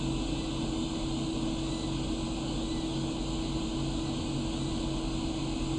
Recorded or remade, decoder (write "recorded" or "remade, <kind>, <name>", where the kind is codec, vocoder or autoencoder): recorded